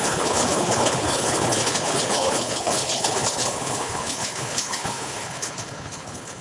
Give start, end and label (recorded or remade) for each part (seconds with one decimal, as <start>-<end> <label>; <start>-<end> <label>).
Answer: 0.0-6.4 remade